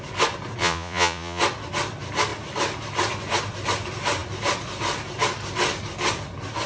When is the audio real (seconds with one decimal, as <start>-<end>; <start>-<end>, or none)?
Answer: 0.0-0.6; 1.4-6.7